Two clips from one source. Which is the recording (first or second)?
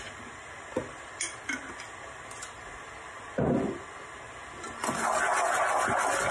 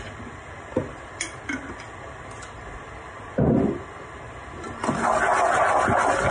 first